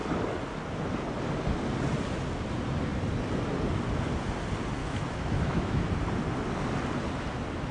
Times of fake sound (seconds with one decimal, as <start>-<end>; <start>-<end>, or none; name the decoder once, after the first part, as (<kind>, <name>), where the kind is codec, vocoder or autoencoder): 4.8-5.8 (autoencoder, DAC-VAE)

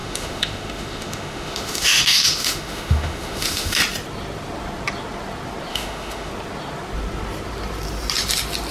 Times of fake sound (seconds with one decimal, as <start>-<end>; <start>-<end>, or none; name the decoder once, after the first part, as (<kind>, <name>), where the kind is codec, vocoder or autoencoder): 0.0-3.8 (autoencoder, DAC-VAE); 5.7-6.3